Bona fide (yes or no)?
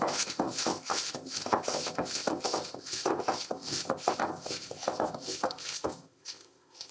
no